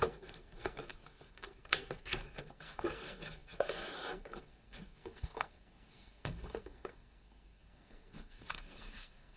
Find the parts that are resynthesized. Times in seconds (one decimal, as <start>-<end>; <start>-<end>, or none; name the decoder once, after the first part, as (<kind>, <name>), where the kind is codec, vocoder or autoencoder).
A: 0.0-9.4 (codec, SNAC)